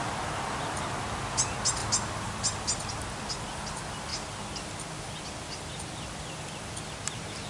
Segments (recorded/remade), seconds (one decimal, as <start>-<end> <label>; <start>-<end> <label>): 0.0-7.5 recorded